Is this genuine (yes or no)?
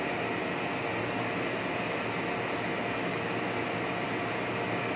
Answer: yes